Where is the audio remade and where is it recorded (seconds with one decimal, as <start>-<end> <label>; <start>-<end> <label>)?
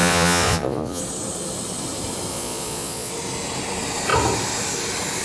0.0-1.0 remade; 1.0-2.3 recorded; 2.3-3.1 remade; 3.1-5.2 recorded